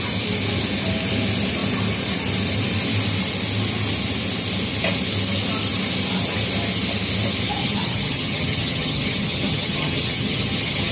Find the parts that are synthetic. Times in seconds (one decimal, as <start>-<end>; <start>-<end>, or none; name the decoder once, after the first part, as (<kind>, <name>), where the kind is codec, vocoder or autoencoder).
7.6-10.9 (vocoder, HiFi-GAN)